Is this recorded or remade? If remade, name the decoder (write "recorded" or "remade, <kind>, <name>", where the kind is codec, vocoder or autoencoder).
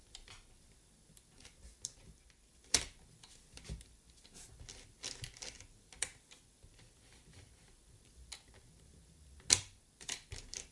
recorded